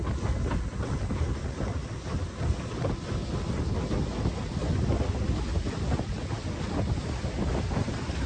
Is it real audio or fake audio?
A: real